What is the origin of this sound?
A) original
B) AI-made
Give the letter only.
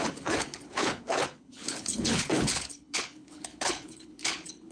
B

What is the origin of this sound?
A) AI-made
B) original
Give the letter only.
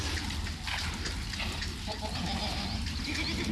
B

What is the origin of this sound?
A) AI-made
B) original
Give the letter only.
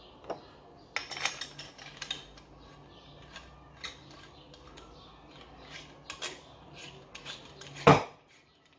B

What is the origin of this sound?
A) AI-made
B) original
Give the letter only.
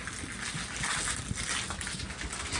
B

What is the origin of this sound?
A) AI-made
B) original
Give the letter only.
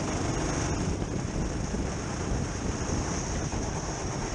B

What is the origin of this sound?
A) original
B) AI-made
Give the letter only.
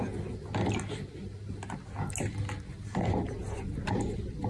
A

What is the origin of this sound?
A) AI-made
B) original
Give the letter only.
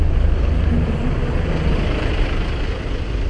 B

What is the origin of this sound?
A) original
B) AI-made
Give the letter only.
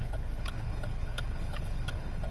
B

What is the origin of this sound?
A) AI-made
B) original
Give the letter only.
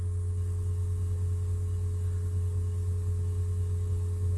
B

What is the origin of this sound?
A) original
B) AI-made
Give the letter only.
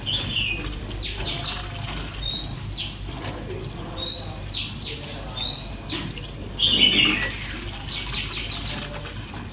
A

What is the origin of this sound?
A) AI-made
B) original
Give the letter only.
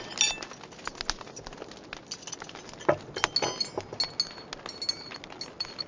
B